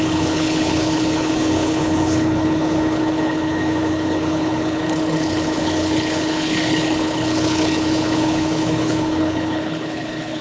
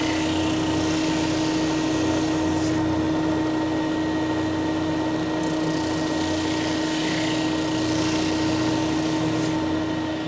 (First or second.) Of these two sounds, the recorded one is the second